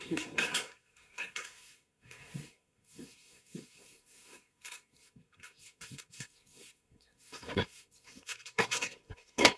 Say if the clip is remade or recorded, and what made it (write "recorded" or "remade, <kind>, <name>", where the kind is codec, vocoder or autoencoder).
remade, codec, SNAC